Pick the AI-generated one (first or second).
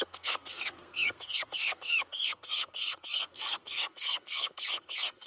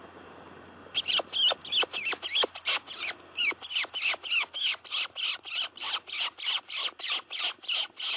first